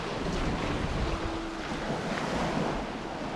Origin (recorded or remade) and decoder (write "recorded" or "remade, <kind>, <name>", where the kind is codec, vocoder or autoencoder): recorded